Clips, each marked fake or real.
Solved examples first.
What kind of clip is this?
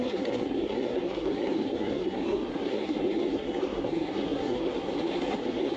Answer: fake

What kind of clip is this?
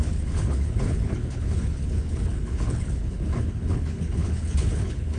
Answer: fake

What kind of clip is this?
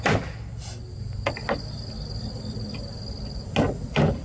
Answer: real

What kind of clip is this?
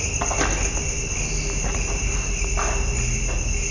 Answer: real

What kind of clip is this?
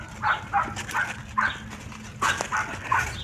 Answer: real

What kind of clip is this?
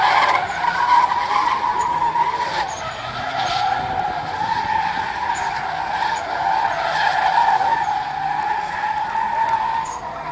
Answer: real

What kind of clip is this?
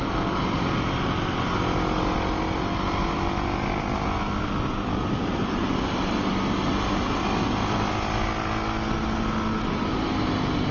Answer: real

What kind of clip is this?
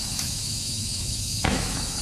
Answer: fake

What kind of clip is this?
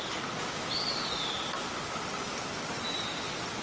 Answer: real